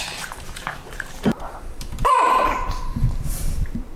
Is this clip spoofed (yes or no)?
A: yes